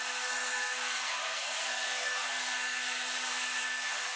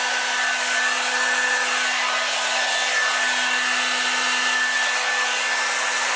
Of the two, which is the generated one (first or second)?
first